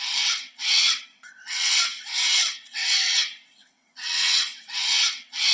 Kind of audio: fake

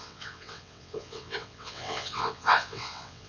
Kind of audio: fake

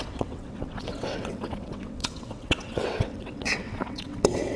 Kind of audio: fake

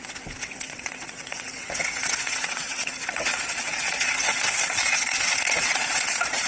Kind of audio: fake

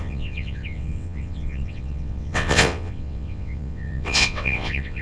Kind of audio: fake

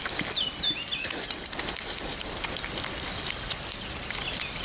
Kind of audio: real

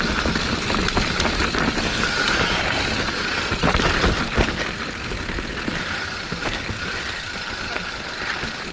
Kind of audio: real